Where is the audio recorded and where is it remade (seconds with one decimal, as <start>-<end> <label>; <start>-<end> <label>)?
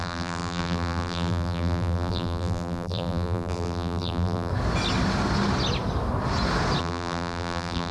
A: 0.0-4.5 remade; 4.5-6.8 recorded; 6.8-7.9 remade